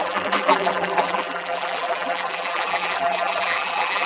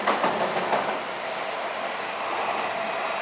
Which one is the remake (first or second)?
first